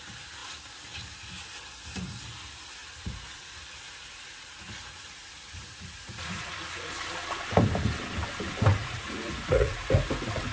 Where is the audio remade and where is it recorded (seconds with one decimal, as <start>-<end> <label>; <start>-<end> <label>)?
0.0-2.8 recorded; 2.8-6.7 remade; 6.7-8.7 recorded; 8.7-9.9 remade; 9.9-10.5 recorded